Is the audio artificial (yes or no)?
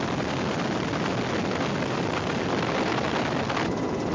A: no